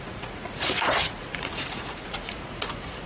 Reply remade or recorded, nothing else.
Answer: remade